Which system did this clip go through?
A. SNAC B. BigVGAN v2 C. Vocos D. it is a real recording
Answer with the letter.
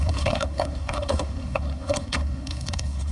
A